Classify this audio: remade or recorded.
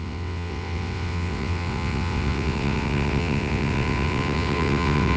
remade